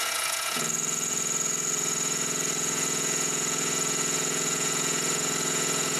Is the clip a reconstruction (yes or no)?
yes